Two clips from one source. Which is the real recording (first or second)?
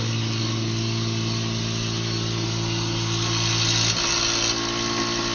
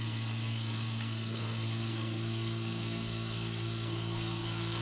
first